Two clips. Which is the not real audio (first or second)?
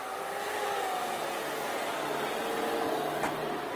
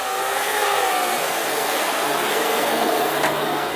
second